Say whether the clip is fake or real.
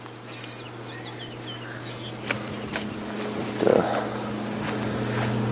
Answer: real